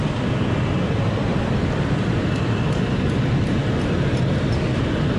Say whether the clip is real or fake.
fake